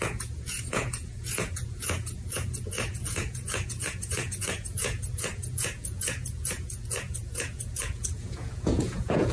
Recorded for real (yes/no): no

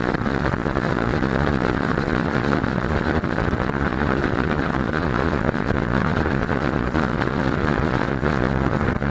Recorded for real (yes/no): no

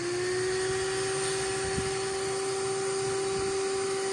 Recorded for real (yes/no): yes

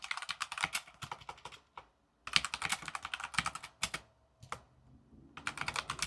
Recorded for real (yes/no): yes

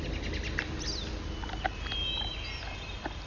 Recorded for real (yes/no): yes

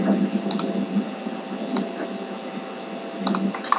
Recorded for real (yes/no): yes